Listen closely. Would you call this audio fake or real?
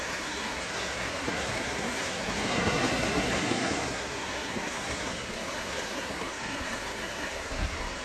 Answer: fake